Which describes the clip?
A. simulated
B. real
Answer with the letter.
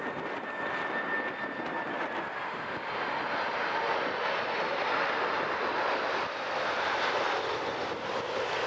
B